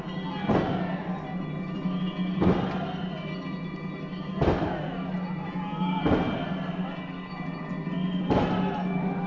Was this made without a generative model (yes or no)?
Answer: yes